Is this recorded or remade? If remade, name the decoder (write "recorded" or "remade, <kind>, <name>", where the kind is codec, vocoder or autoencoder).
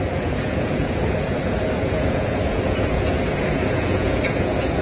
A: remade, vocoder, Vocos